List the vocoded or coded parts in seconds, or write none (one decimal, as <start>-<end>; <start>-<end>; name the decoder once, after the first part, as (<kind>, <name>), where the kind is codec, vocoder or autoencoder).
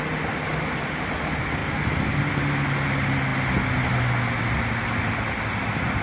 none